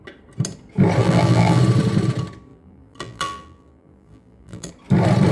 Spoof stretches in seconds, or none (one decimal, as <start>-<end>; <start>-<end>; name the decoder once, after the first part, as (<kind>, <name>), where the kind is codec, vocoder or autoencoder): 1.0-1.6 (vocoder, BigVGAN v2); 2.5-4.7